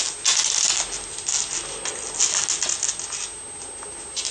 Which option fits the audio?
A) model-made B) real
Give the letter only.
B